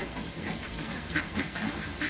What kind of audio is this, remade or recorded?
remade